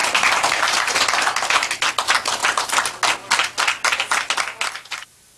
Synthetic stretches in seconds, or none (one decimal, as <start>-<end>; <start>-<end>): 0.0-1.9